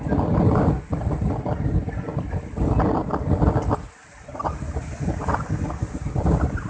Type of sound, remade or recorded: recorded